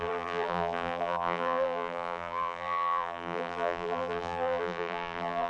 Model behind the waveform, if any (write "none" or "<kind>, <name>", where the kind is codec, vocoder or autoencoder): vocoder, BigVGAN v2